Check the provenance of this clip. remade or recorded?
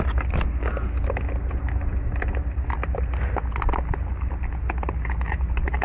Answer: recorded